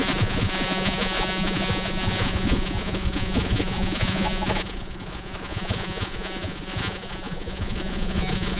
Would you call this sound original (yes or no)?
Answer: no